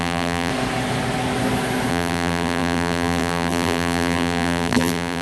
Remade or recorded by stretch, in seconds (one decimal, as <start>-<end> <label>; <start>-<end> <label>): 0.0-0.5 remade; 0.5-1.9 recorded; 1.9-5.2 remade